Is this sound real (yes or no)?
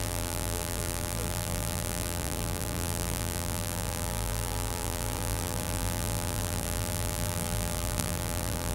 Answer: no